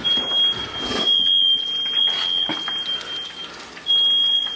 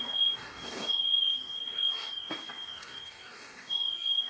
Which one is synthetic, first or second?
second